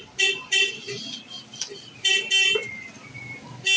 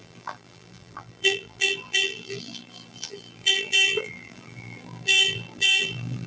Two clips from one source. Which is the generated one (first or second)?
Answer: second